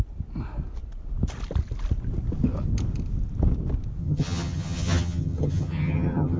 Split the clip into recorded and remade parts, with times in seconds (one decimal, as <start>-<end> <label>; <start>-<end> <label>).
0.0-4.0 recorded; 4.0-6.4 remade